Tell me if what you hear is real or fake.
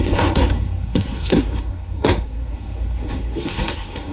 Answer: fake